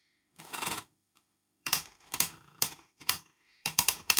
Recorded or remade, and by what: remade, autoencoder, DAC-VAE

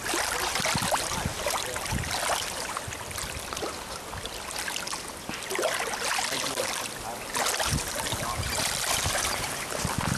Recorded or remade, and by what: remade, vocoder, BigVGAN v2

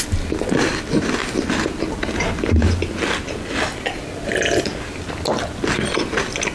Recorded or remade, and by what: recorded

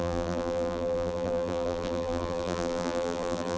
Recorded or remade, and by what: remade, vocoder, BigVGAN v2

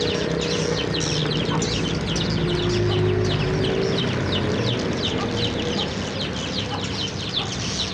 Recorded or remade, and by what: recorded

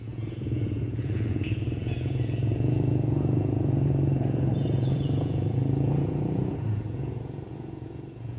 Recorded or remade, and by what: remade, vocoder, Vocos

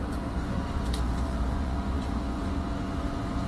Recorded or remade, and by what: remade, vocoder, Vocos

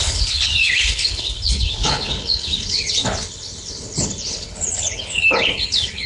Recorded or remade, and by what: remade, codec, HILCodec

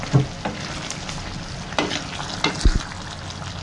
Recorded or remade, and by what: recorded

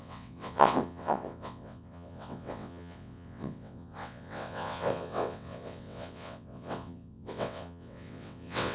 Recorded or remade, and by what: remade, vocoder, WaveNeXt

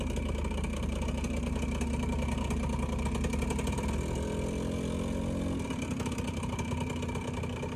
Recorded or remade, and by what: recorded